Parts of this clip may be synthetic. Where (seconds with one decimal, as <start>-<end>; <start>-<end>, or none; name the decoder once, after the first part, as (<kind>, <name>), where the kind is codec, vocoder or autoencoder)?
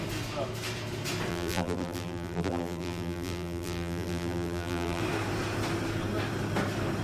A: 1.3-5.0 (vocoder, BigVGAN v2)